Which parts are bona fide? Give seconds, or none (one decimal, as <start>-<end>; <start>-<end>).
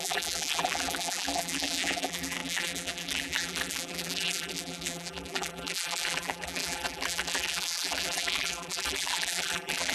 none